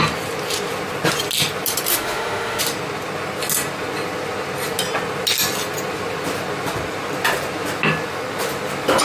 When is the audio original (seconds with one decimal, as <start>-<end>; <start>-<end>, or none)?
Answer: 0.0-1.9; 2.6-9.0

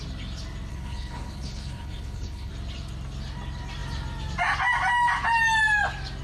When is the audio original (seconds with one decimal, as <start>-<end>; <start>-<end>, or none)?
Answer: 0.0-0.7; 2.5-6.2

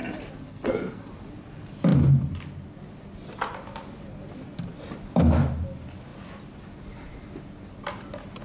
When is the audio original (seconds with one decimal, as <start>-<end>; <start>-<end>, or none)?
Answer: 0.0-0.5; 1.1-8.4

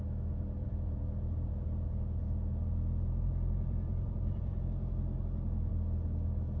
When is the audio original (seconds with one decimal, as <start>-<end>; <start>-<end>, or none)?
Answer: 0.0-0.6; 4.6-6.6

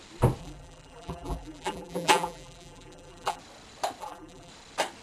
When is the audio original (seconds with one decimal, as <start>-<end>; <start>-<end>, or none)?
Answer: 0.0-0.4; 3.4-4.0; 4.5-5.0

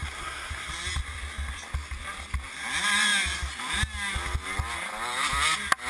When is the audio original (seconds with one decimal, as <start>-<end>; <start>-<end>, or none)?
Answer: 0.7-5.9